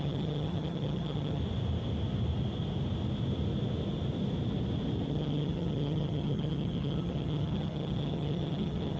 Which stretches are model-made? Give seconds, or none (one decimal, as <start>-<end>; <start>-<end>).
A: 0.0-1.4; 5.1-9.0